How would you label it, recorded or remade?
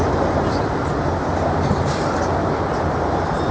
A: recorded